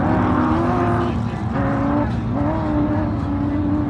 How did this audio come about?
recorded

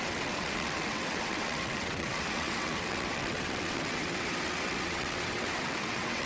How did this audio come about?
remade